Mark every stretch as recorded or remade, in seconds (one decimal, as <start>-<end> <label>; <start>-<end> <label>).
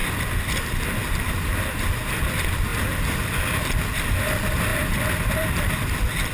0.0-6.3 recorded